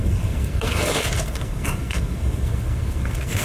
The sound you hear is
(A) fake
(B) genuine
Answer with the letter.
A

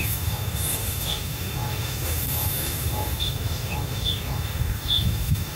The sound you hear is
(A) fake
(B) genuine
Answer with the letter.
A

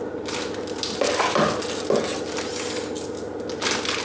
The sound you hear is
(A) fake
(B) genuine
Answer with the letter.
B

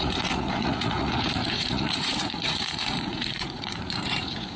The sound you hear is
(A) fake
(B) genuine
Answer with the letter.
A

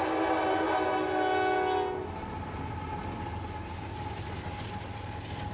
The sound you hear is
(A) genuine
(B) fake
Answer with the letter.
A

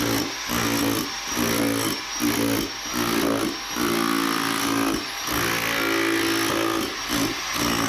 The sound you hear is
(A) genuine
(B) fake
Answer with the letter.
A